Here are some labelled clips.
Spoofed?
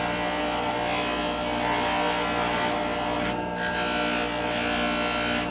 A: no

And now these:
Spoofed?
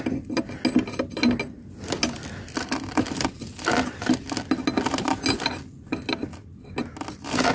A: no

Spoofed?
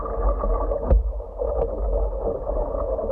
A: no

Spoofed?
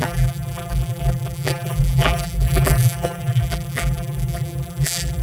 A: yes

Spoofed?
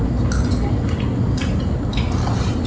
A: no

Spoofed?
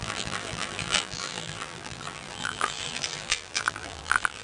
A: yes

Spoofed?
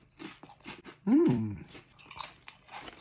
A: yes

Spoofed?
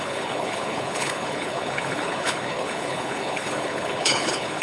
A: yes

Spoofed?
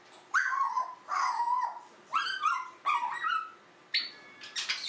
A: no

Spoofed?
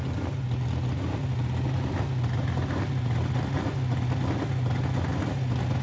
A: no